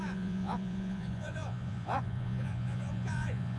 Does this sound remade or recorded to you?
remade